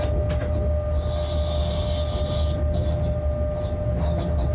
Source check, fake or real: real